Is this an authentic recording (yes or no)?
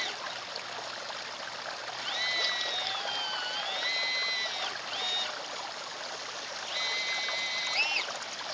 yes